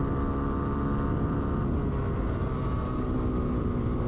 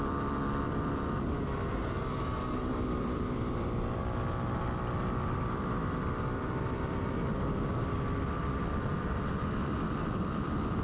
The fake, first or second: second